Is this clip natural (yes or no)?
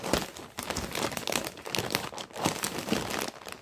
yes